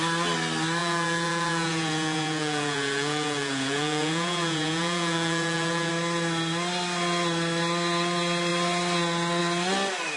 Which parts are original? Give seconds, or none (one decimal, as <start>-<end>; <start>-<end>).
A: 0.0-0.8; 5.9-10.2

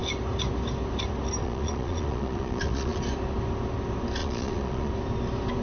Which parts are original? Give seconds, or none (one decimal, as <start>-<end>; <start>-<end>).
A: 0.0-1.4; 3.0-4.2; 4.9-5.6

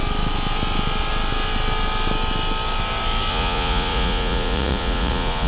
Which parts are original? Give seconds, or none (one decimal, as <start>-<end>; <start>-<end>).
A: 0.0-3.3

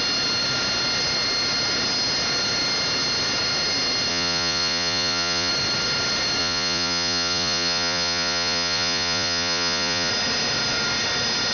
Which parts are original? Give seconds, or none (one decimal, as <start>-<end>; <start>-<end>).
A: 0.0-4.1; 5.5-6.4; 10.1-11.5

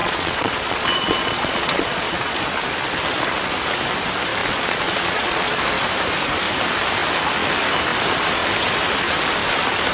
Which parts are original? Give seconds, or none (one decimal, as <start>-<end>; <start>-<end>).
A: 2.4-4.4; 5.6-9.9

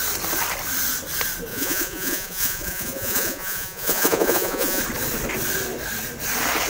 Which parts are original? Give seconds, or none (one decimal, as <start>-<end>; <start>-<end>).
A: 0.0-1.5; 4.8-6.7

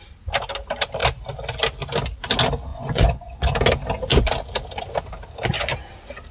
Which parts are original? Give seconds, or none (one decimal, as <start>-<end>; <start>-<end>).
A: 0.0-2.7; 3.5-6.3